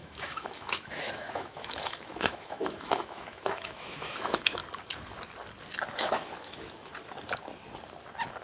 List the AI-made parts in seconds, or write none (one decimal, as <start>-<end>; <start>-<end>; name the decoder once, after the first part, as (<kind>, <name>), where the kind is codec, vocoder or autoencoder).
0.0-4.6 (autoencoder, DAC-VAE); 6.0-6.9